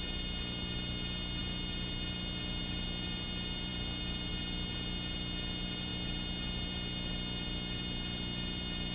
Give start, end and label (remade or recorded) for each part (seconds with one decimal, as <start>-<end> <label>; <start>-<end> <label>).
0.0-8.9 recorded